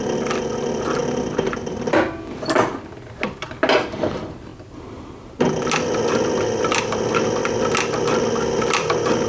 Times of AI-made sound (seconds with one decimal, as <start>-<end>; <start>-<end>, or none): 0.0-4.5; 6.7-7.4; 8.0-9.3